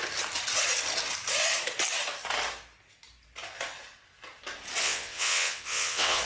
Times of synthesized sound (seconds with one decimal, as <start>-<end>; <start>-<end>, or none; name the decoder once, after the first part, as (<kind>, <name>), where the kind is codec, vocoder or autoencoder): 4.8-6.2 (vocoder, WaveNeXt)